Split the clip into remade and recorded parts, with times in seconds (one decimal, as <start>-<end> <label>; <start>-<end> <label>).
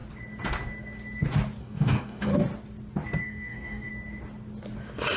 0.0-1.6 recorded; 1.6-2.3 remade; 2.3-3.2 recorded; 3.2-3.9 remade; 3.9-5.2 recorded